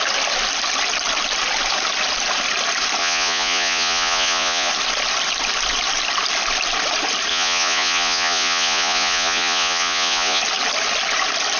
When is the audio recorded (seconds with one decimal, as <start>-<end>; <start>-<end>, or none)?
0.0-3.0; 4.7-7.3; 10.4-11.6